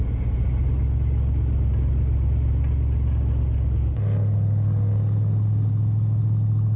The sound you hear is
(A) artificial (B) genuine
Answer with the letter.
B